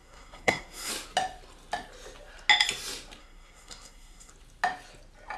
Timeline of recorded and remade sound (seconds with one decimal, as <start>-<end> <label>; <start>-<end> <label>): 0.0-0.9 remade; 0.9-3.2 recorded; 3.2-4.3 remade; 4.3-5.4 recorded